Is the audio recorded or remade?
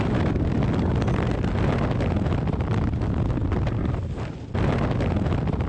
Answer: recorded